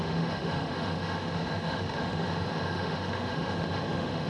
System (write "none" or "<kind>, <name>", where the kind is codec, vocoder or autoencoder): autoencoder, DAC-VAE